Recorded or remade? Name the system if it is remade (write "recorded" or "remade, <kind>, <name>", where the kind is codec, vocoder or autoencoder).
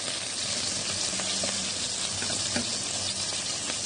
recorded